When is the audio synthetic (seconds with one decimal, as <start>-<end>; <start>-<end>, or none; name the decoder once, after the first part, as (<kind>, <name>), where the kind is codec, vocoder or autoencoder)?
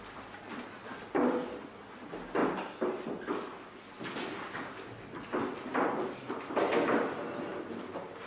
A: none